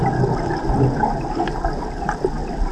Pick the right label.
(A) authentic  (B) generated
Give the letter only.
A